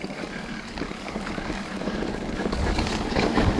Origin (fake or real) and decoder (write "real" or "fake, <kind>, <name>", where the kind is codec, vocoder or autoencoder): fake, codec, DAC